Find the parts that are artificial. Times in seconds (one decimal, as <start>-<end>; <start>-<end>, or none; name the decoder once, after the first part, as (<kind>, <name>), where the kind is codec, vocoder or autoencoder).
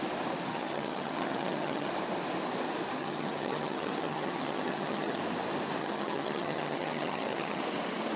0.5-1.9 (vocoder, HiFi-GAN); 3.0-5.2; 5.8-7.6